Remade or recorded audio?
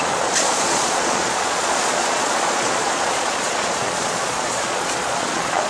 remade